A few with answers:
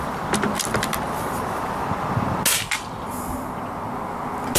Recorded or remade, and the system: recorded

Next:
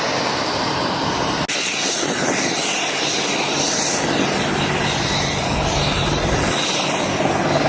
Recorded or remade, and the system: recorded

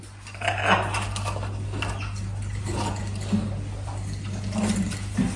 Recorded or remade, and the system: recorded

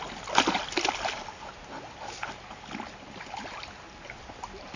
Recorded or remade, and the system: recorded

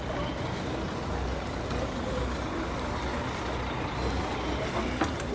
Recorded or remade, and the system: recorded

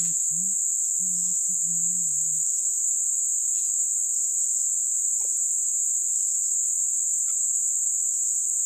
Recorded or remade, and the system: recorded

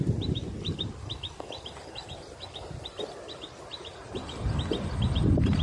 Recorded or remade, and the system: recorded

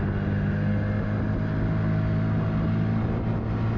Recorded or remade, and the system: recorded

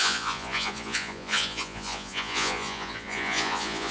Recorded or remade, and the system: remade, vocoder, Vocos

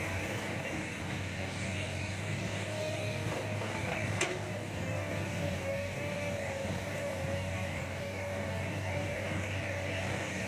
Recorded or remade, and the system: remade, codec, DAC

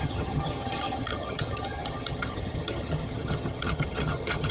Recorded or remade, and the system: remade, vocoder, HiFi-GAN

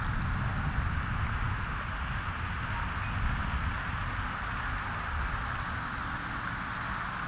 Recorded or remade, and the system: recorded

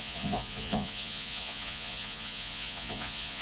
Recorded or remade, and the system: remade, vocoder, Vocos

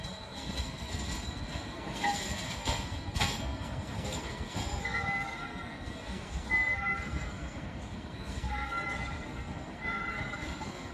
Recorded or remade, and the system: remade, codec, SNAC